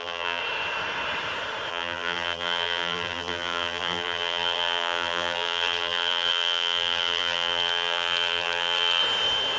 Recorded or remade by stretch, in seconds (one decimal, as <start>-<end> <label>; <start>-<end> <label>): 0.0-0.4 remade; 0.4-1.7 recorded; 1.7-9.0 remade; 9.0-9.6 recorded